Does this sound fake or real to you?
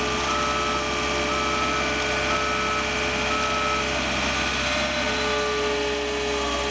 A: real